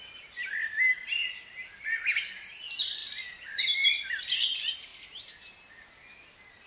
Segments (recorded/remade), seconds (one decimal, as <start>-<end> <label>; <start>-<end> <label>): 0.0-6.7 recorded